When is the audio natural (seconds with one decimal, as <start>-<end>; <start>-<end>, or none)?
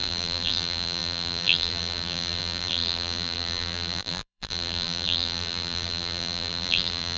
none